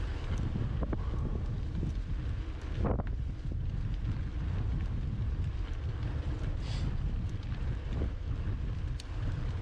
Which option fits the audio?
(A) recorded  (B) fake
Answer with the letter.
A